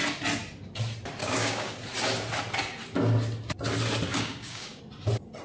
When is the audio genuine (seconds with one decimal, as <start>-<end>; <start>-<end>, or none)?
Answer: 0.0-1.2; 1.7-4.1; 4.8-5.4